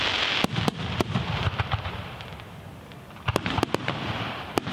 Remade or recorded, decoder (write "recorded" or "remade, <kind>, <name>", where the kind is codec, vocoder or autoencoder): recorded